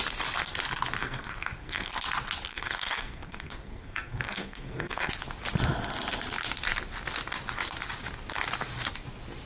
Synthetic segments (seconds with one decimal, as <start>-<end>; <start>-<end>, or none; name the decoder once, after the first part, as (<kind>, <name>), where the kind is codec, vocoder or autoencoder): 1.0-1.9 (codec, SNAC); 2.5-5.1